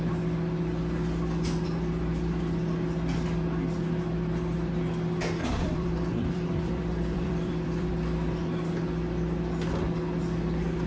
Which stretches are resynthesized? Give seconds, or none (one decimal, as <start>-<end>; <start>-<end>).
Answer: 5.4-7.9